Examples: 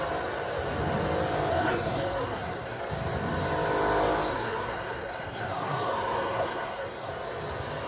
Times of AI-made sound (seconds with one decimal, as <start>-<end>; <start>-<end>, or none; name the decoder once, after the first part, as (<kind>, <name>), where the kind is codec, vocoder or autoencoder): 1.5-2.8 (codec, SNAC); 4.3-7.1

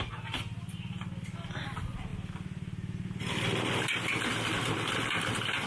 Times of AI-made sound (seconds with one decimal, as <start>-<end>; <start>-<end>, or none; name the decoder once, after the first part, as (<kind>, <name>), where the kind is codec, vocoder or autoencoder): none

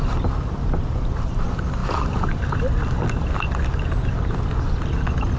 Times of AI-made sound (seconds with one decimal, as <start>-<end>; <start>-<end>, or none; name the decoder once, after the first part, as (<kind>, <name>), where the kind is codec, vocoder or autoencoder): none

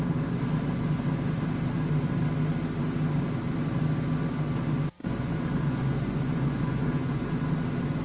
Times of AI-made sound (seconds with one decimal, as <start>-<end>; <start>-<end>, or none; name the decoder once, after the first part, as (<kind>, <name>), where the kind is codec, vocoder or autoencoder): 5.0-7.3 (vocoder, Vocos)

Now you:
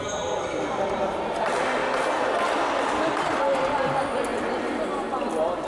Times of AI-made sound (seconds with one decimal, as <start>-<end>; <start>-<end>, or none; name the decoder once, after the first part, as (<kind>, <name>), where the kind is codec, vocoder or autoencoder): none

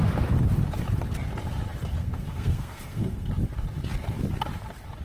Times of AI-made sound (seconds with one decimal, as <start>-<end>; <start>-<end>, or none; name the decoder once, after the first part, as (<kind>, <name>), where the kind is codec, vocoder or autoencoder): 2.0-3.3 (codec, SNAC)

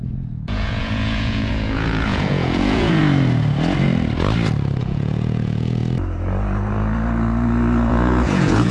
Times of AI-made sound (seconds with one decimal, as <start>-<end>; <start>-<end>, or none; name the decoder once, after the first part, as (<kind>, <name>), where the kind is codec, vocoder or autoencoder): 0.0-3.0 (vocoder, Vocos); 4.8-5.8; 7.9-8.7